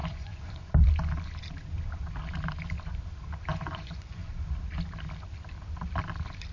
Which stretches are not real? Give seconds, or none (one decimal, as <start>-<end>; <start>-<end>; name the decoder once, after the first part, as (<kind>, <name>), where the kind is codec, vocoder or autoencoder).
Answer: 0.0-0.7 (vocoder, Vocos); 3.5-4.3